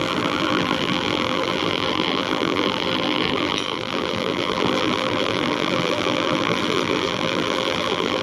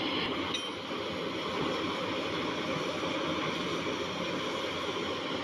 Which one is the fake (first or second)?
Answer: first